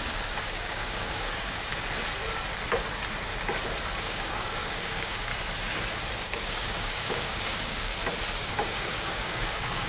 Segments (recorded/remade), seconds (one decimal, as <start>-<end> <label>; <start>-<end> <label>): 0.0-1.7 remade; 1.7-4.0 recorded; 4.0-5.3 remade; 5.3-6.2 recorded; 6.2-7.9 remade; 7.9-8.5 recorded; 8.5-9.9 remade